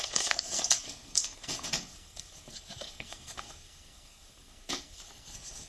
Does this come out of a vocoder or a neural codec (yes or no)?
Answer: yes